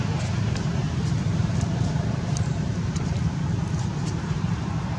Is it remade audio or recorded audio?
remade